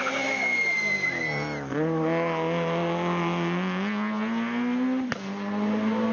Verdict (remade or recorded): recorded